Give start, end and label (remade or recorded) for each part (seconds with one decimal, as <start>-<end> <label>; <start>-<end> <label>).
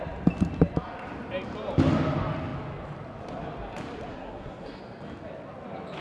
0.0-4.1 recorded; 4.1-4.8 remade; 4.8-6.0 recorded